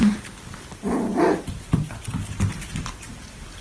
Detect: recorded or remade recorded